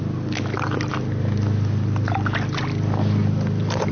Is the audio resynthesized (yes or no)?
no